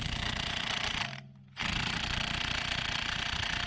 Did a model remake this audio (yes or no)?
no